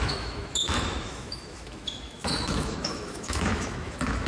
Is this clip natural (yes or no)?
no